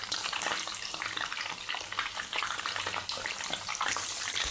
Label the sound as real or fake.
fake